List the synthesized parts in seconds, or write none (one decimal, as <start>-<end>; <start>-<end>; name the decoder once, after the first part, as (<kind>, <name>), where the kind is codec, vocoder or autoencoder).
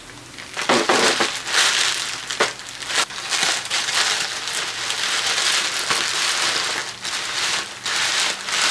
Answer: none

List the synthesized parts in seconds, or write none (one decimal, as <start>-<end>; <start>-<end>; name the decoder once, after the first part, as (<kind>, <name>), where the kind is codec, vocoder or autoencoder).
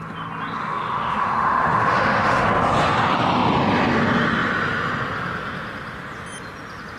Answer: 0.6-2.5 (autoencoder, DAC-VAE)